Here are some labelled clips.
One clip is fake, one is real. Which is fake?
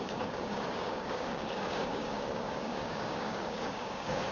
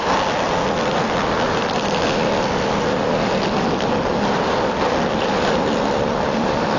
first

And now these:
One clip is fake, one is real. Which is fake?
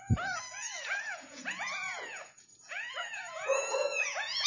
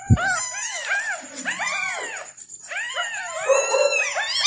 first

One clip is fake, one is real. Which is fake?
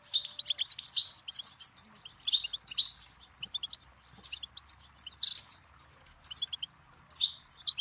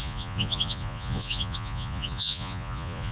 second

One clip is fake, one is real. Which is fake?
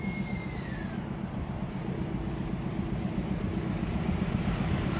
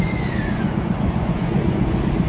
second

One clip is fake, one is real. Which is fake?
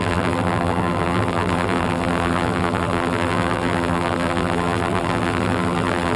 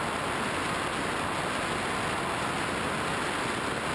first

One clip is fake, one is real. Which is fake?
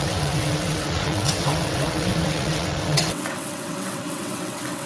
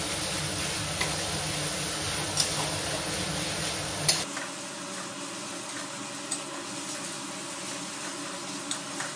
first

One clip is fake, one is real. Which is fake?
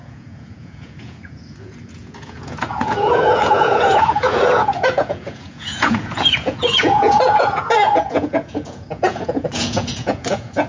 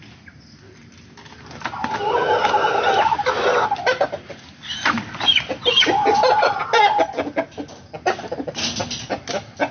first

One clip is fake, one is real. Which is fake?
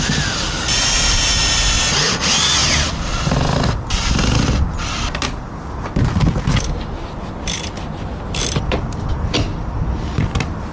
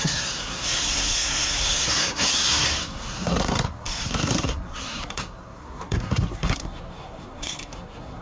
second